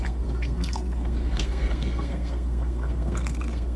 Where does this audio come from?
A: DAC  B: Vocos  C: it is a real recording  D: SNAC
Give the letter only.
D